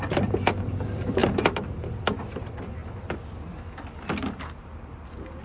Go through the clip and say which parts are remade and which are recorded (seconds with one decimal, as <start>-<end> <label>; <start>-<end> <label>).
0.0-2.8 remade; 2.8-4.6 recorded; 4.6-5.4 remade